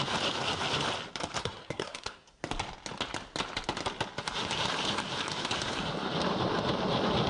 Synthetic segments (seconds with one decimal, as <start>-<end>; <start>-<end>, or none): 1.4-2.4